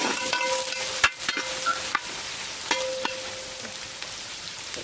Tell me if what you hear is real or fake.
real